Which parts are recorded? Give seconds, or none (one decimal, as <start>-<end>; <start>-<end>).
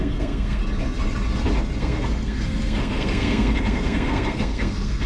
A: 0.6-1.8